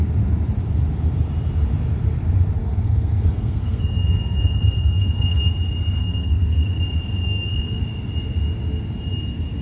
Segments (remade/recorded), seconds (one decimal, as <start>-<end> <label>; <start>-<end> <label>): 0.0-2.6 recorded; 2.6-5.5 remade; 5.5-6.0 recorded; 6.0-6.8 remade; 6.8-7.2 recorded; 7.2-7.8 remade; 7.8-9.6 recorded